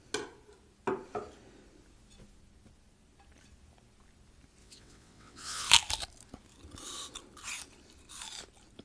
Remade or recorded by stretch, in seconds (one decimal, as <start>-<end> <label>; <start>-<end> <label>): 0.0-4.6 recorded; 4.6-5.7 remade; 5.7-8.8 recorded